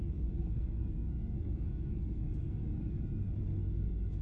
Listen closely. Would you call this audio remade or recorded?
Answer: remade